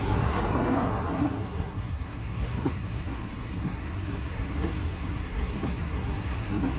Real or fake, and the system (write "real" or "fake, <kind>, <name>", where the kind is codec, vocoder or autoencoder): fake, codec, SNAC